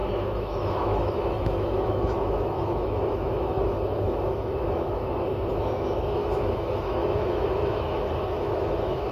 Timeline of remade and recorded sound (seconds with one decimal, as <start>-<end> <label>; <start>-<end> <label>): 0.0-9.1 remade